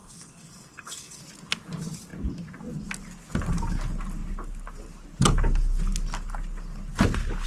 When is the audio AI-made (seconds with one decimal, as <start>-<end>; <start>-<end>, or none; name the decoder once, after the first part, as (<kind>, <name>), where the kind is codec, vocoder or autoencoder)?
0.0-1.2 (codec, SNAC)